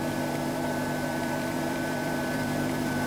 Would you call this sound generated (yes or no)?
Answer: yes